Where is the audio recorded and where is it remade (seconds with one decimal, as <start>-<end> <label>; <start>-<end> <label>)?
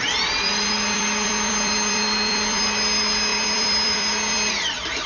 0.0-5.1 remade